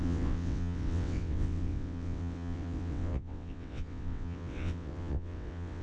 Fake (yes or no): yes